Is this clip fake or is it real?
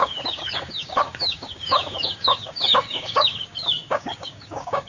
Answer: fake